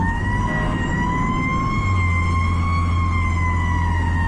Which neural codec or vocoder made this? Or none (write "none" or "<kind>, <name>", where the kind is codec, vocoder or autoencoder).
none